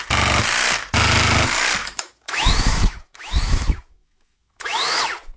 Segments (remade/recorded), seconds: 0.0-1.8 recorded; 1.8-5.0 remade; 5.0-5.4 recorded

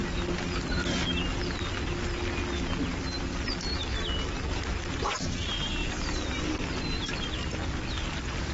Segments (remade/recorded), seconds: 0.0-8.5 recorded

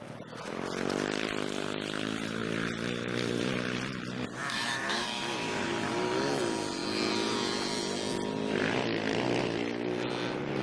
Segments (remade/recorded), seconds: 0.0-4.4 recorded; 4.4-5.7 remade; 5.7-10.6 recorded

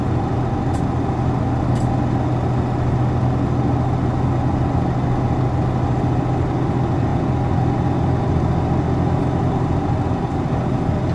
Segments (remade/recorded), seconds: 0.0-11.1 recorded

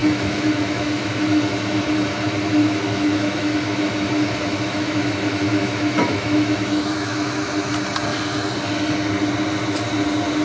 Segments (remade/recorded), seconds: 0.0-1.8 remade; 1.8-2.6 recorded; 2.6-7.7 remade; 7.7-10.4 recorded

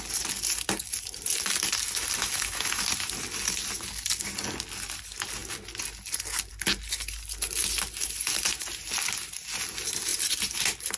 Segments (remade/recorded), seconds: 0.0-2.2 recorded; 2.2-2.8 remade; 2.8-11.0 recorded